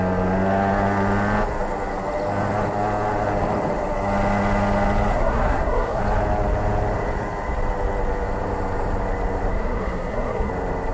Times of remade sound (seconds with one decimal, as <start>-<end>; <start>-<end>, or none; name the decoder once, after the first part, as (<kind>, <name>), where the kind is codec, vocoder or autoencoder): 5.1-6.0 (codec, SNAC); 9.5-10.5